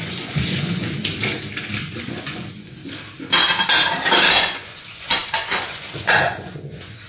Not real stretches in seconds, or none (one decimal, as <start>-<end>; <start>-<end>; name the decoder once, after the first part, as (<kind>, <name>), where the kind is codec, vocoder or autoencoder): 0.0-1.0 (vocoder, Vocos); 1.8-2.8; 4.4-7.1